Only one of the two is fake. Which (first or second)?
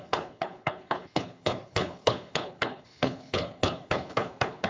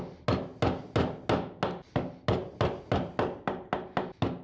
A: first